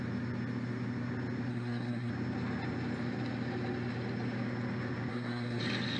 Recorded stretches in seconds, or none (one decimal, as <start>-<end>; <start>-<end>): 0.0-1.5; 2.1-5.1; 5.6-6.0